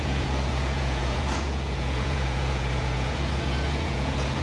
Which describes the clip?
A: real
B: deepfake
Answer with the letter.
B